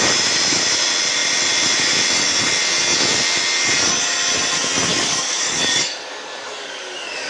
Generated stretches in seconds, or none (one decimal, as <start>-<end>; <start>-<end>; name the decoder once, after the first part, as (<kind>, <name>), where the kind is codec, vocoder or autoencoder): 4.9-7.3 (codec, DAC)